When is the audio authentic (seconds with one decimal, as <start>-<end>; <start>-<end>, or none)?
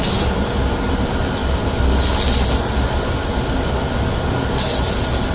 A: 0.0-5.3